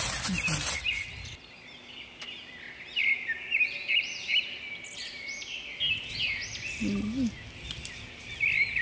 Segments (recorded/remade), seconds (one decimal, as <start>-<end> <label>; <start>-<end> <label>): 0.0-8.8 recorded